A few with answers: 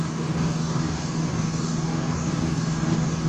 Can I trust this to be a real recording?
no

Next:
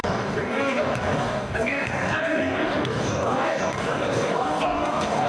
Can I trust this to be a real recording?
no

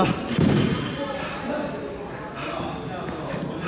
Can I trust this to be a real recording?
yes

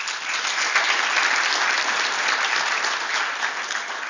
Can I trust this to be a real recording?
yes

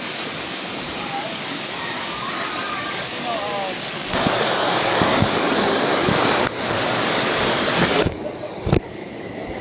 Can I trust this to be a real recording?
no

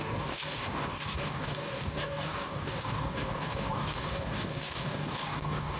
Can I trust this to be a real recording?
no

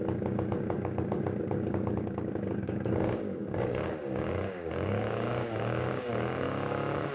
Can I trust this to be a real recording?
no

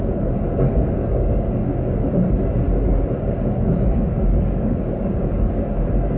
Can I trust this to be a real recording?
no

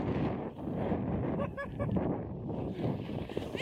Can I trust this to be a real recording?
yes